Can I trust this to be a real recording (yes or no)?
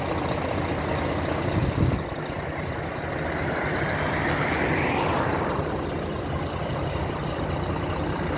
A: yes